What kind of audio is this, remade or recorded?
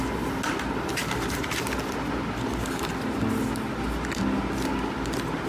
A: recorded